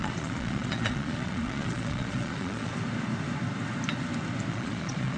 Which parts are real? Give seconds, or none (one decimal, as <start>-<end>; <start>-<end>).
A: 2.7-4.5